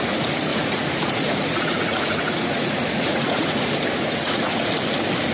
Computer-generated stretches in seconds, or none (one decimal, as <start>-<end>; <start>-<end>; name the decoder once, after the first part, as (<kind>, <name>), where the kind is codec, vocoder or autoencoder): 0.5-3.7 (vocoder, Vocos); 4.2-4.7